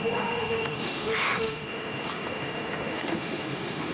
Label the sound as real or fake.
fake